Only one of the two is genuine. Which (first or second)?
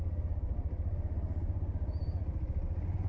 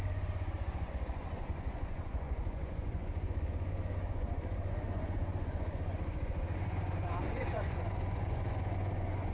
first